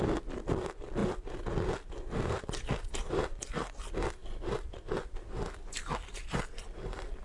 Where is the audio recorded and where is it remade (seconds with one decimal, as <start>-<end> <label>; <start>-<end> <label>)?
0.0-7.2 recorded